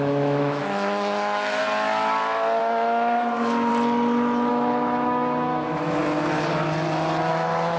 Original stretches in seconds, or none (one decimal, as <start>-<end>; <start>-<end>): 1.6-2.6; 3.7-4.5; 6.0-7.3